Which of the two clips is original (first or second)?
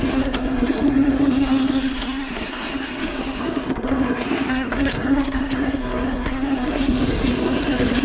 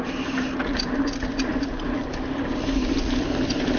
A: second